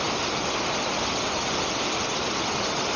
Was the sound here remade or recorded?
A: recorded